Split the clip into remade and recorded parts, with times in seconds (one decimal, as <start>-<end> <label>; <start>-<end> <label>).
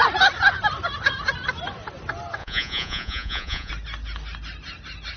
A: 0.0-2.4 recorded; 2.4-3.7 remade; 3.7-5.2 recorded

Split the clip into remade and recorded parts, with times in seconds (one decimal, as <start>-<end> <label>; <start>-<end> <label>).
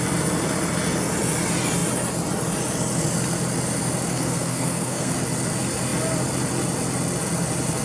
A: 0.0-4.1 recorded; 4.1-5.1 remade; 5.1-7.8 recorded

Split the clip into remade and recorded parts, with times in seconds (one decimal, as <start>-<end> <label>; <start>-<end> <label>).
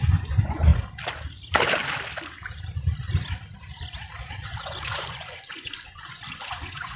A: 0.0-0.7 remade; 0.7-4.3 recorded; 4.3-7.0 remade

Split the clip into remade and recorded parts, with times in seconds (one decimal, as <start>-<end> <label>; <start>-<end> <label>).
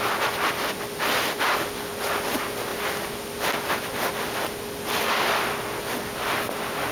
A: 0.0-6.9 recorded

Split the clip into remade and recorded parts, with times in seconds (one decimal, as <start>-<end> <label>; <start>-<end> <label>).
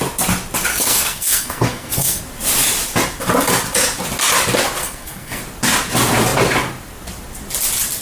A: 0.0-0.7 recorded; 0.7-2.2 remade; 2.2-4.8 recorded; 4.8-5.4 remade; 5.4-8.0 recorded